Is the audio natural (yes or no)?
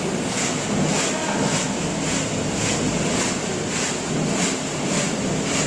yes